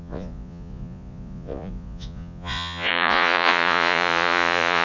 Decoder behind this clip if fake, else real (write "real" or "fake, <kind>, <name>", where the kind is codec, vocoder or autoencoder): fake, vocoder, Vocos